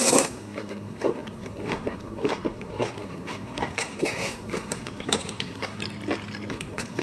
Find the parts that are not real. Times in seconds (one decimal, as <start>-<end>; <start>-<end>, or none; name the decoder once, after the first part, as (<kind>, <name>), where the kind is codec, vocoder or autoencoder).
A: 0.0-5.8 (codec, SNAC); 6.5-7.0